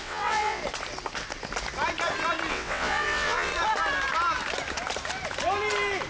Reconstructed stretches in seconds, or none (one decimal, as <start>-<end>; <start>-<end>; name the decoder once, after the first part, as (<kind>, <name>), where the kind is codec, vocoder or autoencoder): 0.0-0.6 (vocoder, WaveNeXt); 2.5-3.5